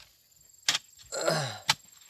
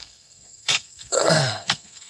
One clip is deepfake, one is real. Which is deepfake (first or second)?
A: second